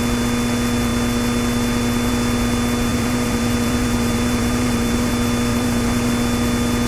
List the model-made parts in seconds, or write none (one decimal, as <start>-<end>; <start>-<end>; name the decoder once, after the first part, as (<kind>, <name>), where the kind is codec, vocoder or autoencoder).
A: 2.9-5.1 (vocoder, BigVGAN v2); 5.5-6.1